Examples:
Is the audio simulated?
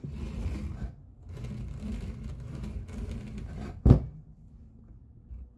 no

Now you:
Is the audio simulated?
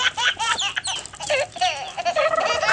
no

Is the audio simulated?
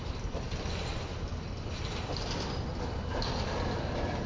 no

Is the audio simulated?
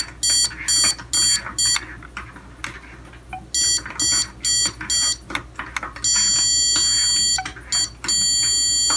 no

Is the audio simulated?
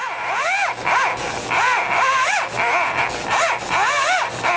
no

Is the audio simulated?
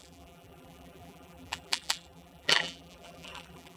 yes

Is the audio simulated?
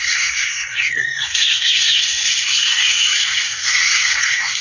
yes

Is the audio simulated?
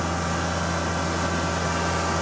no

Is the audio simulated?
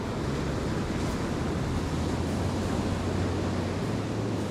no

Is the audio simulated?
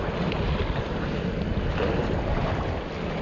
no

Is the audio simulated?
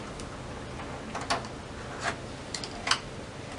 no